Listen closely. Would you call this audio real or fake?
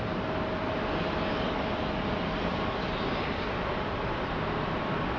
real